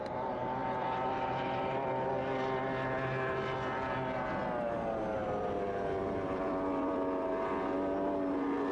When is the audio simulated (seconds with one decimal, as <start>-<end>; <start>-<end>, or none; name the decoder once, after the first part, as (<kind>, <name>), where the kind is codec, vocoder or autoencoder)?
0.6-1.9 (vocoder, BigVGAN v2); 5.2-7.3